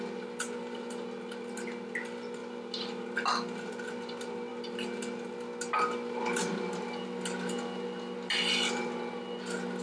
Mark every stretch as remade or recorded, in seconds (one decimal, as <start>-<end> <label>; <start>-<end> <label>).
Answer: 0.0-9.8 recorded